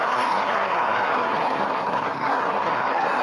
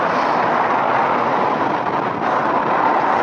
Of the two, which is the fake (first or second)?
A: first